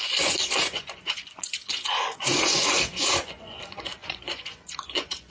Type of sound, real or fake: fake